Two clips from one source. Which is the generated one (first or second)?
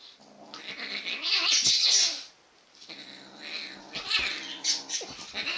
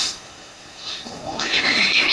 second